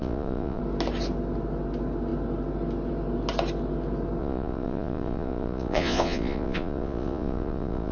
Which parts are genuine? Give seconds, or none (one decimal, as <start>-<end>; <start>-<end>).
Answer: 0.6-4.2